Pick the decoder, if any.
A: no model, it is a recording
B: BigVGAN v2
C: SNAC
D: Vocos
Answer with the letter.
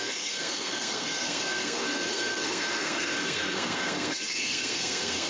C